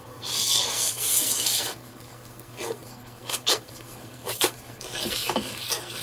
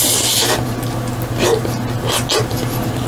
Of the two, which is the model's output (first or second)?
first